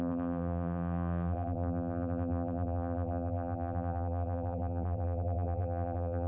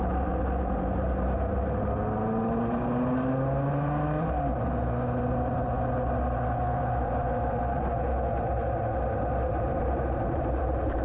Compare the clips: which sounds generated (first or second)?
first